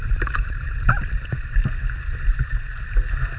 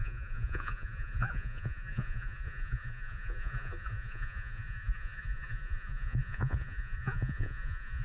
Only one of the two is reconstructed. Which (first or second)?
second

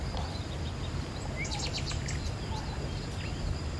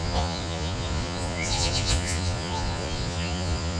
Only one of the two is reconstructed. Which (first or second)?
second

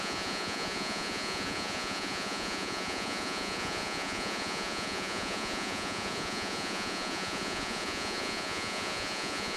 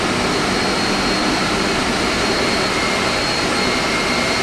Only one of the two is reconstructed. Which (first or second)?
first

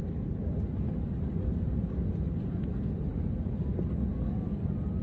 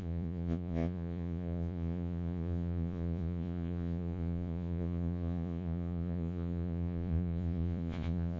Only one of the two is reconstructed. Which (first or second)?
second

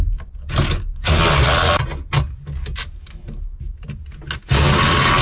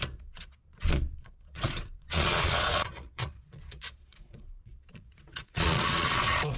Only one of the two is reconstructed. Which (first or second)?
second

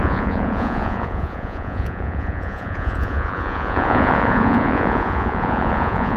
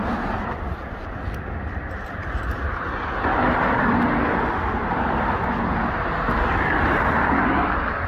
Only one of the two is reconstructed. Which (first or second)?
first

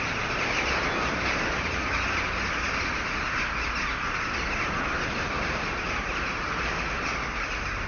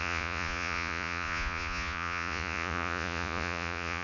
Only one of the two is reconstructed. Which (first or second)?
second